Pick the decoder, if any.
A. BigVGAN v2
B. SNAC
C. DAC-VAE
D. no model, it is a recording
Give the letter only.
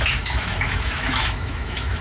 C